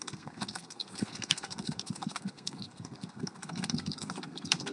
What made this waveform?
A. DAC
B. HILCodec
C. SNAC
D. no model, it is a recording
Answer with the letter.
C